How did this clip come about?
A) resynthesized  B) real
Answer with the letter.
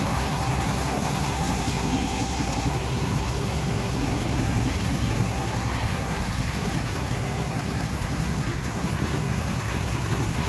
A